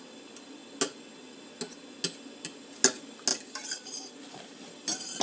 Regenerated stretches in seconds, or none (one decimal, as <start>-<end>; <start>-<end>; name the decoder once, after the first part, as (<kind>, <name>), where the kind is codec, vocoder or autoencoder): 3.3-4.6 (vocoder, BigVGAN v2)